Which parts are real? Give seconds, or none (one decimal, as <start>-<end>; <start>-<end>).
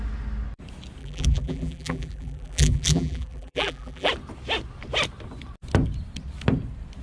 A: 0.0-1.0; 4.1-7.0